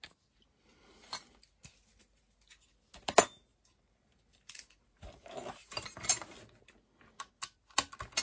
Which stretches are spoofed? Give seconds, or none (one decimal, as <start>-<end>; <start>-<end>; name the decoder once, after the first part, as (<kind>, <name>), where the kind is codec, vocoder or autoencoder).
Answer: 3.5-6.2 (vocoder, BigVGAN v2)